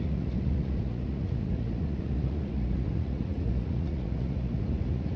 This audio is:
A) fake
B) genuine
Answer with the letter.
A